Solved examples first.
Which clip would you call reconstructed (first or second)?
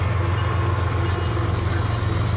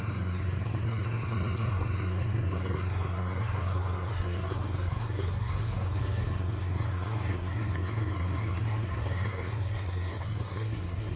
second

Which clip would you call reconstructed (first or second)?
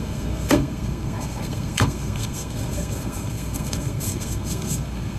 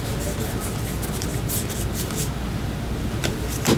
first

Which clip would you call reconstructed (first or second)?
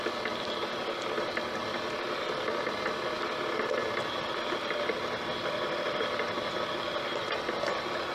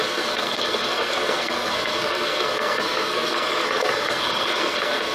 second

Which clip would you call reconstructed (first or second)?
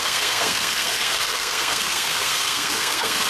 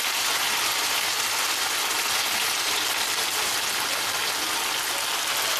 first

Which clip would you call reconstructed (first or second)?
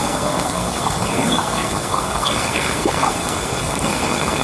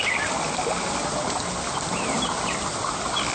first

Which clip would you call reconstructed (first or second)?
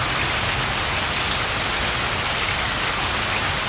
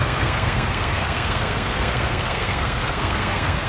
second